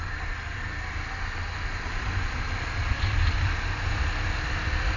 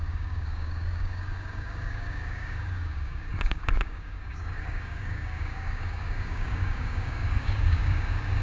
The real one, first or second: first